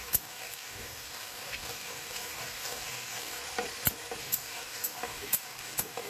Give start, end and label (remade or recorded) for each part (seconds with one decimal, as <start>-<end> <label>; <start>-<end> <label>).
0.0-3.4 remade; 3.4-4.2 recorded; 4.2-6.1 remade